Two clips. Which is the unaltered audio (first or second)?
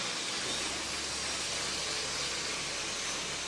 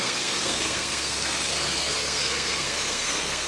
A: first